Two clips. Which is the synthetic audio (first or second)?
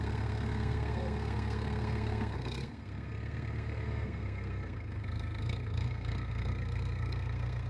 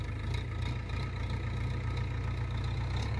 first